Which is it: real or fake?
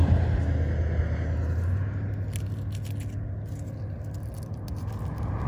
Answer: real